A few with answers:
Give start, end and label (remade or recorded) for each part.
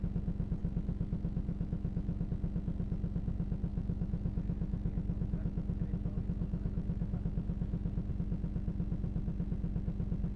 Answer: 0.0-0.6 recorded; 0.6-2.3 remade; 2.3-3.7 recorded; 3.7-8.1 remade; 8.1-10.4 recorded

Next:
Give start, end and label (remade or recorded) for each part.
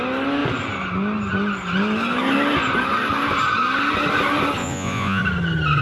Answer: 0.0-4.6 recorded; 4.6-5.2 remade; 5.2-5.8 recorded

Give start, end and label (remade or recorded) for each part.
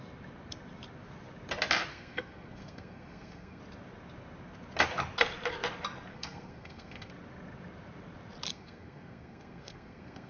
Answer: 0.0-1.9 recorded; 1.9-3.6 remade; 3.6-6.1 recorded; 6.1-7.1 remade; 7.1-8.5 recorded; 8.5-10.3 remade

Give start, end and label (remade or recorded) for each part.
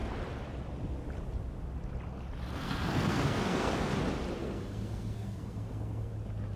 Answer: 0.0-2.5 recorded; 2.5-3.9 remade; 3.9-4.4 recorded; 4.4-6.1 remade; 6.1-6.6 recorded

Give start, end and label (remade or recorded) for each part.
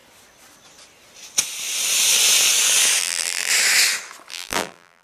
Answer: 0.0-3.0 recorded; 3.0-3.5 remade; 3.5-4.3 recorded; 4.3-5.0 remade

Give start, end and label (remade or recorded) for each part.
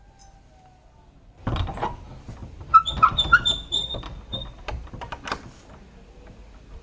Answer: 0.0-6.8 recorded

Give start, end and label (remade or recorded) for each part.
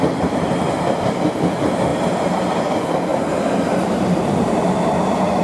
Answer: 0.0-1.9 recorded; 1.9-2.6 remade; 2.6-3.1 recorded; 3.1-5.4 remade